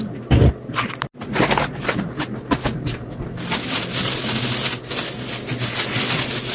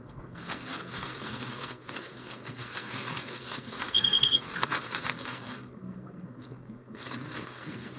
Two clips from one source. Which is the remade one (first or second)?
second